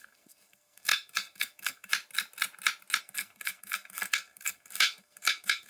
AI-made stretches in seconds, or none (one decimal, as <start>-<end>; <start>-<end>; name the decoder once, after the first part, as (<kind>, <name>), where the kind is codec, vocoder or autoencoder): 0.0-1.9 (codec, SNAC); 3.0-5.7